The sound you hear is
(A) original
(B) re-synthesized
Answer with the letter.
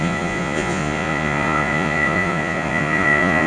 B